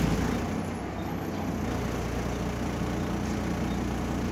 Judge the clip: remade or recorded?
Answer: recorded